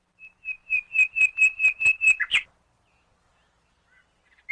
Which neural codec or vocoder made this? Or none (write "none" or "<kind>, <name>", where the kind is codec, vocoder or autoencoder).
none